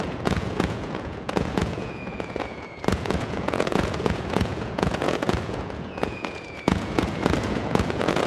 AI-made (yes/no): yes